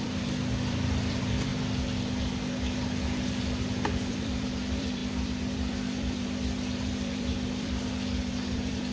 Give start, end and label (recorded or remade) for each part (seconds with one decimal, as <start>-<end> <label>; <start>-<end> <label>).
0.0-1.5 remade; 1.5-4.1 recorded; 4.1-8.9 remade